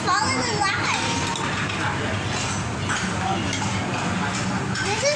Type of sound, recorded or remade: recorded